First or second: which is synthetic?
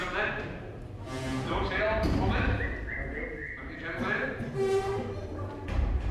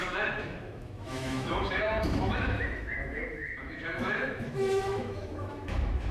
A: second